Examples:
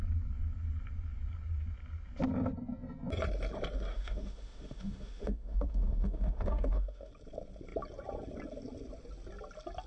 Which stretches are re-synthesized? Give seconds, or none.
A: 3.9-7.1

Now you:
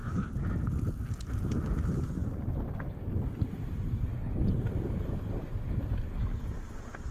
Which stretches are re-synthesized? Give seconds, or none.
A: none

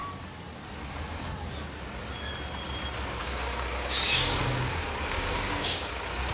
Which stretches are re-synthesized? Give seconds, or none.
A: 3.2-5.8